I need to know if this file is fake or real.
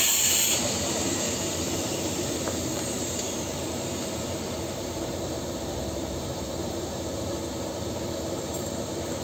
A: fake